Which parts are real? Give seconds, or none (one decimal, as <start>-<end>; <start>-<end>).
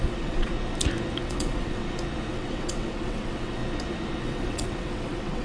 0.5-1.2; 1.8-2.3; 3.6-4.2